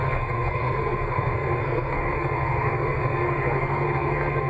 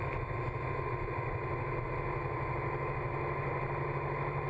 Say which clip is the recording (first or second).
second